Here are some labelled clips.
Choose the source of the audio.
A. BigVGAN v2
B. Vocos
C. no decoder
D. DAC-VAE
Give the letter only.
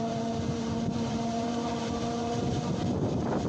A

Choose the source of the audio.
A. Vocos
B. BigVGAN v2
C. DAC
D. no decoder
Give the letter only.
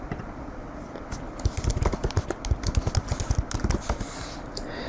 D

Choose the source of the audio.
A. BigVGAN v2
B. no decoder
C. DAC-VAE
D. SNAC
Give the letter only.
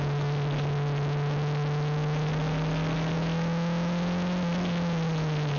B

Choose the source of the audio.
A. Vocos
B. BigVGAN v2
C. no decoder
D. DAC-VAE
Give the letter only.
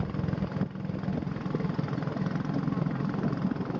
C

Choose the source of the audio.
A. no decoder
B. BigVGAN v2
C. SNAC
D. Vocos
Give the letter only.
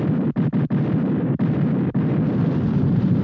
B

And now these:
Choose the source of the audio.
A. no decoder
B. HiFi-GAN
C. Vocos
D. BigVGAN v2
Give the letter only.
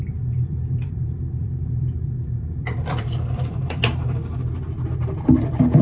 D